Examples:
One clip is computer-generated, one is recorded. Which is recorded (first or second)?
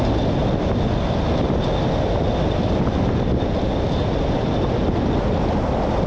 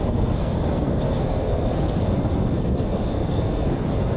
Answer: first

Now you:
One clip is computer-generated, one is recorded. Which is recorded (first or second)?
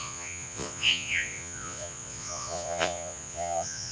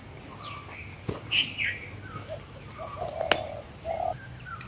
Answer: second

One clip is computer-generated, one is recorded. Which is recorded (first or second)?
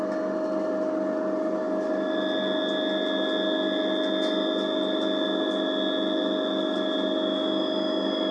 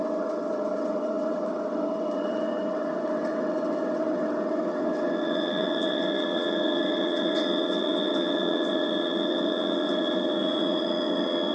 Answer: first